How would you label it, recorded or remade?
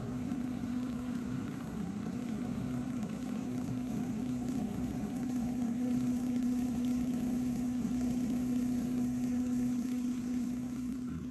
remade